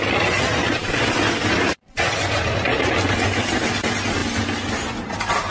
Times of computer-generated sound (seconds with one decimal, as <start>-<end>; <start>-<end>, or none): none